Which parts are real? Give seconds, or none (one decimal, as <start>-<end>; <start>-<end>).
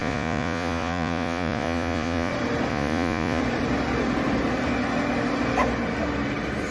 2.3-2.7; 3.4-6.7